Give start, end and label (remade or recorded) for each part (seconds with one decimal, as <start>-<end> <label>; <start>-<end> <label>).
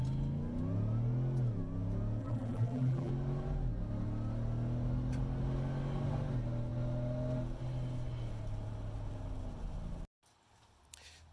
0.0-2.2 recorded; 2.2-3.1 remade; 3.1-11.3 recorded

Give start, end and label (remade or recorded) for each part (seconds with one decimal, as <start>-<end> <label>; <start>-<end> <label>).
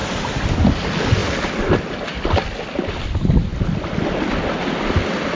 0.0-5.3 recorded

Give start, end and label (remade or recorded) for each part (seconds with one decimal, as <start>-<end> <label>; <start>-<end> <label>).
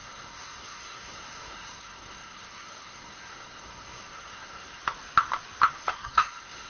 0.0-4.8 remade; 4.8-5.7 recorded; 5.7-6.7 remade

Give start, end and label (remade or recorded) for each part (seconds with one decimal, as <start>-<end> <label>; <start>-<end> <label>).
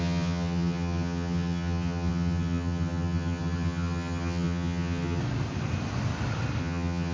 0.0-5.2 remade; 5.2-6.6 recorded; 6.6-7.1 remade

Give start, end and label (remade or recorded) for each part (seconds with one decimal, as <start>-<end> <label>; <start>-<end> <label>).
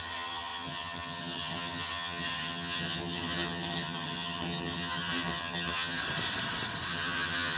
0.0-6.0 remade; 6.0-6.9 recorded; 6.9-7.6 remade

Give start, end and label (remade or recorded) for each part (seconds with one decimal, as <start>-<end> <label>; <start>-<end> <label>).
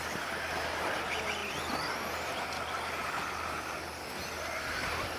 0.0-5.2 recorded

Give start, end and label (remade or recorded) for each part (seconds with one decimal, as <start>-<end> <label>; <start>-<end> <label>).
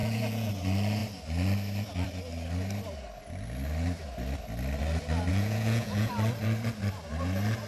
0.0-0.5 remade; 0.5-5.3 recorded; 5.3-6.1 remade; 6.1-7.7 recorded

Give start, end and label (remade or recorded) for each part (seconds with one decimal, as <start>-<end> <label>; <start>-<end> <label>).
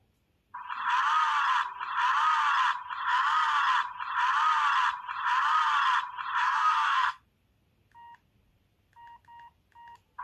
0.0-6.4 recorded; 6.4-7.2 remade; 7.2-10.2 recorded